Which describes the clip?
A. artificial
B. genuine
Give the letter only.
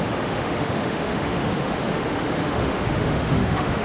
A